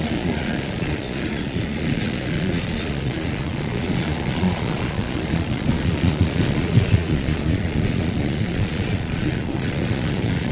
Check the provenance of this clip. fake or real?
fake